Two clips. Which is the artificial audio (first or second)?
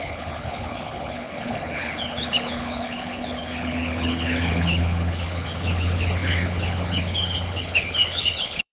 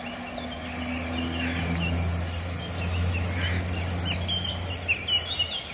first